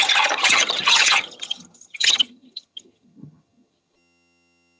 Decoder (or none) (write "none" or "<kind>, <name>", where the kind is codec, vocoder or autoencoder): vocoder, HiFi-GAN